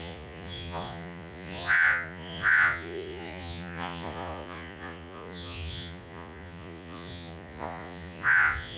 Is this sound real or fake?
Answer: fake